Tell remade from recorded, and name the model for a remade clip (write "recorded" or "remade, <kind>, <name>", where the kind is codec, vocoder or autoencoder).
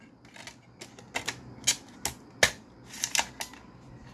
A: recorded